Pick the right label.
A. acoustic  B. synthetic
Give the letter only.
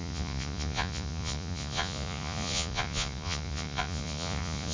B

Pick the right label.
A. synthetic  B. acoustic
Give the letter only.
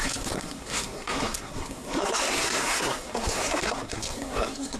A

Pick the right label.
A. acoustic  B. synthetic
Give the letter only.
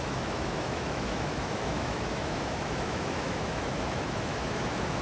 B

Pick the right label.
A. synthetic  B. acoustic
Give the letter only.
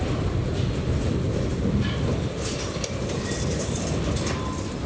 B